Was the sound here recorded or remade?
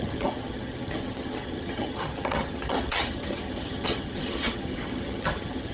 remade